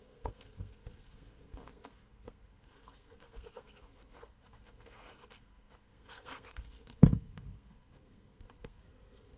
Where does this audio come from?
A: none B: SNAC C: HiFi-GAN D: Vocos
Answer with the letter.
B